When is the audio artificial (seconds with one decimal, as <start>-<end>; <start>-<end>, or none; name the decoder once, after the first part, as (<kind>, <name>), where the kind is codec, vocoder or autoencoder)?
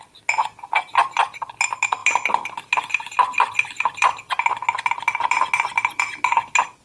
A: none